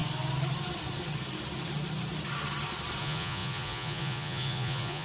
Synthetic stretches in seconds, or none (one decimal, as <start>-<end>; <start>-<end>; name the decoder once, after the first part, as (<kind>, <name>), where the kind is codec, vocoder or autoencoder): 3.0-5.0 (vocoder, Vocos)